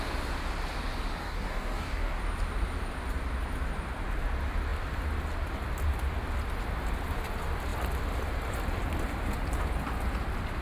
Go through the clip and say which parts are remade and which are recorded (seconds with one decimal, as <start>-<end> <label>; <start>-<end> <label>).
0.0-1.2 recorded; 1.2-2.2 remade; 2.2-10.6 recorded